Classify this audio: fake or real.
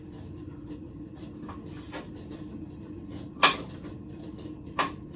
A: real